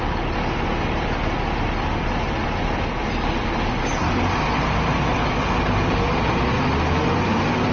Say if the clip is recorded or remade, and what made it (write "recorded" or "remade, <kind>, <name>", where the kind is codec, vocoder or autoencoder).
recorded